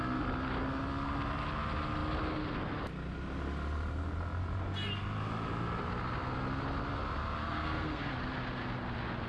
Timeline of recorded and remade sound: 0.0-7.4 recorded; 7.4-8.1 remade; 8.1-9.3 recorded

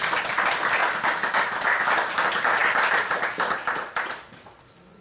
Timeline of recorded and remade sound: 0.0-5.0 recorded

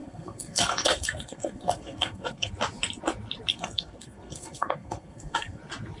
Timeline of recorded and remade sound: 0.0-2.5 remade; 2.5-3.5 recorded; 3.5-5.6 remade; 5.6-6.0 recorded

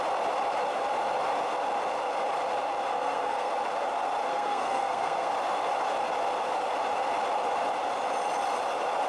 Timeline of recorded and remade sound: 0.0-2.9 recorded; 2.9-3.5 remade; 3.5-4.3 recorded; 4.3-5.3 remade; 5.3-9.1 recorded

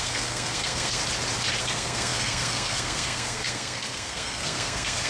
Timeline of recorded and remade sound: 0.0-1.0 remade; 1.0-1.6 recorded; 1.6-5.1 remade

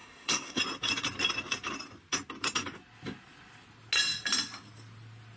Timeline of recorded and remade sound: 0.0-0.6 remade; 0.6-5.4 recorded

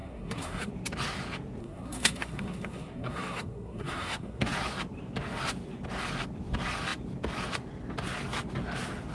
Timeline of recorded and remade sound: 0.0-0.7 remade; 0.7-1.6 recorded; 1.6-4.4 remade; 4.4-9.1 recorded

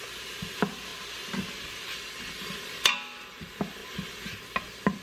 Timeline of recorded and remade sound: 0.0-5.0 recorded